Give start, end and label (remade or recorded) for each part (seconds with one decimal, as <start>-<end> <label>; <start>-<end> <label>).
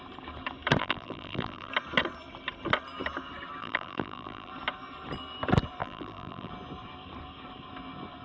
0.0-0.8 recorded; 0.8-1.7 remade; 1.7-3.6 recorded; 3.6-4.5 remade; 4.5-5.8 recorded; 5.8-6.5 remade; 6.5-8.2 recorded